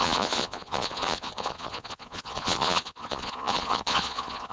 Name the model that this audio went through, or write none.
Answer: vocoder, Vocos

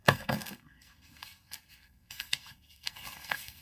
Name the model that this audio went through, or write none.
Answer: codec, SNAC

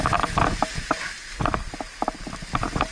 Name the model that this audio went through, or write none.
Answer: none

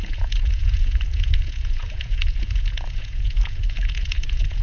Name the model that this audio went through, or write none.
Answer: vocoder, Vocos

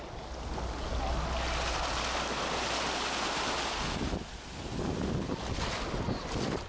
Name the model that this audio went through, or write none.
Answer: none